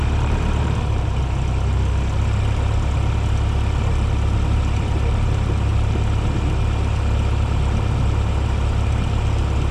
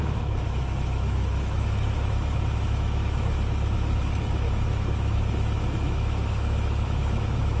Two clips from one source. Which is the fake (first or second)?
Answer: second